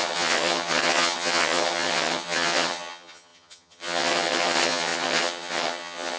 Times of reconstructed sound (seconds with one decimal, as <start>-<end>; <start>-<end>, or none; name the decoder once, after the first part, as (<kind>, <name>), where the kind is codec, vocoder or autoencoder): 0.0-6.2 (vocoder, HiFi-GAN)